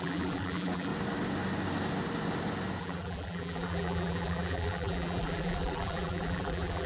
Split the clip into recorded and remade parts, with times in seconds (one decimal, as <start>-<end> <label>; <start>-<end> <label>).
0.0-0.9 remade; 0.9-2.8 recorded; 2.8-6.9 remade